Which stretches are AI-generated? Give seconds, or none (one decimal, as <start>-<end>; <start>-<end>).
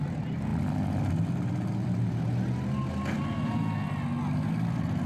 none